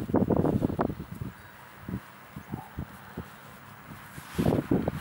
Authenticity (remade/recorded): recorded